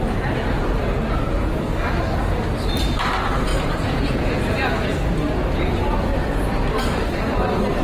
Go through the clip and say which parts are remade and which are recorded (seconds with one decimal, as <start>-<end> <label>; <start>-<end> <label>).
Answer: 0.0-3.5 recorded; 3.5-5.1 remade; 5.1-7.8 recorded